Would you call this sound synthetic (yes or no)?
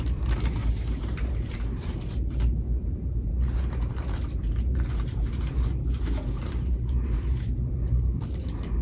yes